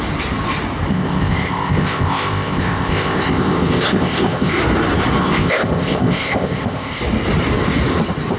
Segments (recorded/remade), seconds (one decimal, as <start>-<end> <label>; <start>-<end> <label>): 0.0-0.9 recorded; 0.9-4.6 remade; 4.6-5.2 recorded; 5.2-7.0 remade; 7.0-8.4 recorded